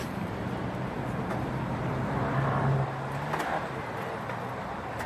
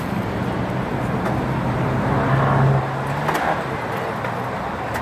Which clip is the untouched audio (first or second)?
second